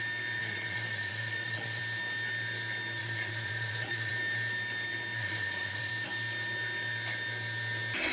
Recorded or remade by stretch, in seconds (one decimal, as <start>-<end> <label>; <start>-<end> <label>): 0.0-0.4 recorded; 0.4-1.8 remade; 1.8-3.0 recorded; 3.0-4.1 remade; 4.1-5.2 recorded; 5.2-5.9 remade; 5.9-8.1 recorded